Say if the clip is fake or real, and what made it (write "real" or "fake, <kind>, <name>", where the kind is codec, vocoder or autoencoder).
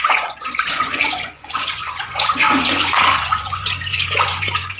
fake, vocoder, Vocos